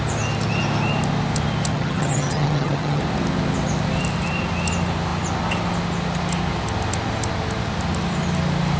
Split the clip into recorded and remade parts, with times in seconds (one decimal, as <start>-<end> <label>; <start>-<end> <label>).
0.0-1.7 recorded; 1.7-3.0 remade; 3.0-8.8 recorded